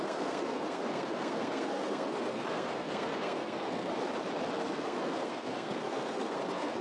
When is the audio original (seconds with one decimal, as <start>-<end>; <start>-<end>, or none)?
3.9-4.5